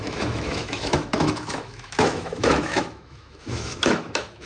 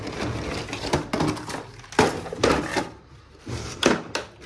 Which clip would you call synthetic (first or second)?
first